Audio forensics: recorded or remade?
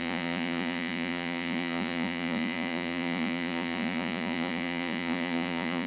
remade